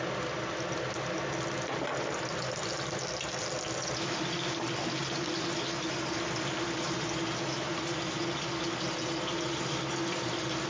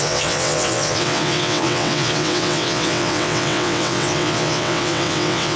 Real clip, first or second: first